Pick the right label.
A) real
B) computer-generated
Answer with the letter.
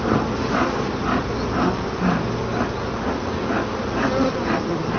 A